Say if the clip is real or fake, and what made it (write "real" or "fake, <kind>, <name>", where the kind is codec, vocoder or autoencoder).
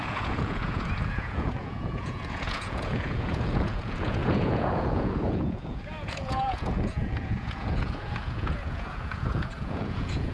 fake, vocoder, Vocos